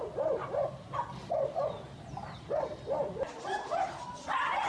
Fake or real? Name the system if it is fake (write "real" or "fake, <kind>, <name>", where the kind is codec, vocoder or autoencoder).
real